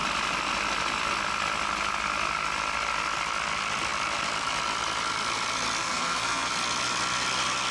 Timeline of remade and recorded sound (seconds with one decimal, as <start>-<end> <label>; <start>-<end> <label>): 0.0-5.8 recorded; 5.8-6.5 remade; 6.5-7.7 recorded